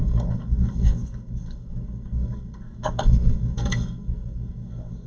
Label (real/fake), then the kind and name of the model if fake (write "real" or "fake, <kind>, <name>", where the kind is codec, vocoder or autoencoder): fake, codec, SNAC